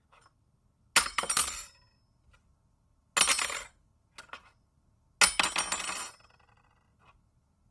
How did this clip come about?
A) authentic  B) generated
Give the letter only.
A